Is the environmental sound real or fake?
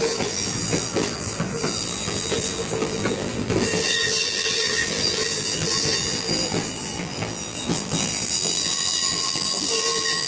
fake